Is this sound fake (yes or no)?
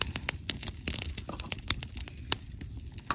no